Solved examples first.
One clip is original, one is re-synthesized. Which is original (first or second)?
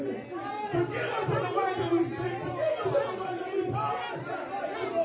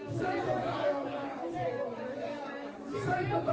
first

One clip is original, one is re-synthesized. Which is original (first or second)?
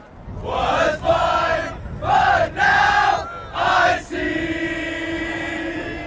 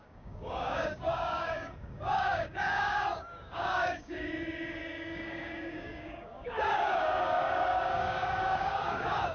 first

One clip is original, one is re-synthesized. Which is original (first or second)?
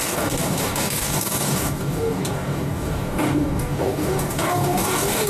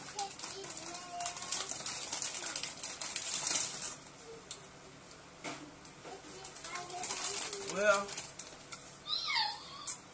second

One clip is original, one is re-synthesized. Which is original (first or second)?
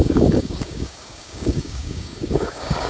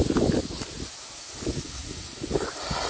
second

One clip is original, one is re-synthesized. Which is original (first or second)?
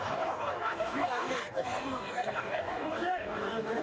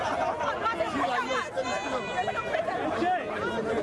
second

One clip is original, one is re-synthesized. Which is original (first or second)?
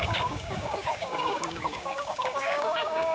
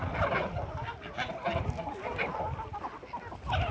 second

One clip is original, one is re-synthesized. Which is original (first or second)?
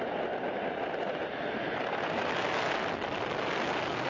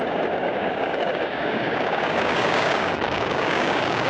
first